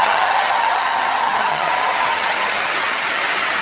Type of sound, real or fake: fake